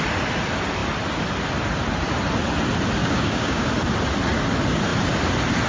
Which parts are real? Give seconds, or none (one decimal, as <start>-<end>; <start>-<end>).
0.0-3.0; 3.7-5.7